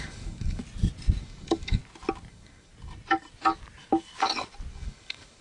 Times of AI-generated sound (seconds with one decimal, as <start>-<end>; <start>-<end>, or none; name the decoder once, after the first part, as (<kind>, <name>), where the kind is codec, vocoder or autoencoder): 0.0-0.6 (codec, DAC); 1.2-1.8; 2.3-2.7; 4.7-5.4